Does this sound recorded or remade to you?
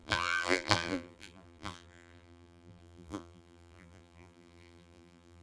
remade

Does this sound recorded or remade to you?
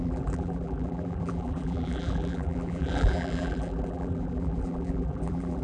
remade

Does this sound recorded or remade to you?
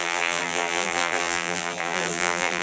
remade